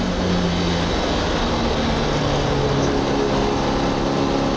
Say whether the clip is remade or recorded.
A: recorded